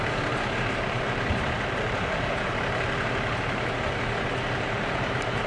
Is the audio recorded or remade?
remade